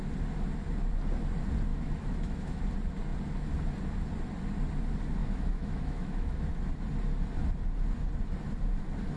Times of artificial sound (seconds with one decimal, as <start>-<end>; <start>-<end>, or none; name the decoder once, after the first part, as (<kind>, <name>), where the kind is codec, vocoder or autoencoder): 1.7-2.6 (autoencoder, DAC-VAE); 5.2-6.7